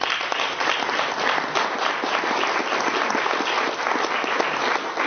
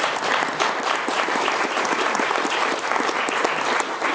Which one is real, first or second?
first